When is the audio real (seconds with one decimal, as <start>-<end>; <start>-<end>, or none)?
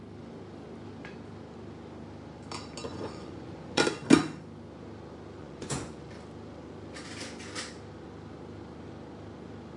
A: 0.0-2.9; 3.8-5.4; 6.1-9.8